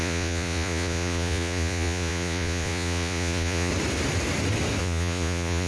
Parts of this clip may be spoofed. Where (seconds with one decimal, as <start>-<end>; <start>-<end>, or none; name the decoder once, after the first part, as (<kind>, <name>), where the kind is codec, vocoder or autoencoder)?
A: 0.0-3.7 (vocoder, Vocos); 4.8-5.7